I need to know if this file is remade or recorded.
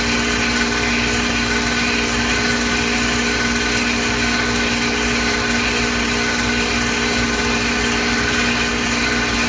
recorded